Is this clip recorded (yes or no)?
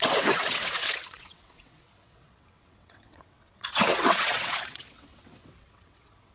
no